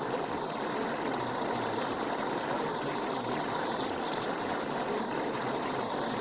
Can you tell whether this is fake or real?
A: real